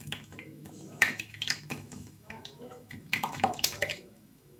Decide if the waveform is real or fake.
fake